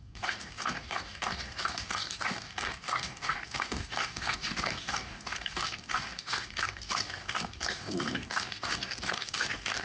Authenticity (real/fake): fake